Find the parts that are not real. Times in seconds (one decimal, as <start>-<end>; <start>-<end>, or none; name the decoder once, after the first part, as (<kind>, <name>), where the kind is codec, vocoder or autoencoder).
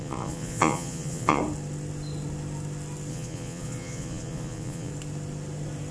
0.0-1.4 (vocoder, Vocos); 3.1-4.9